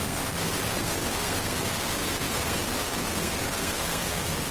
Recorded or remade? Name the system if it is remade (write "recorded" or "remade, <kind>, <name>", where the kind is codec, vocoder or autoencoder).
remade, codec, SNAC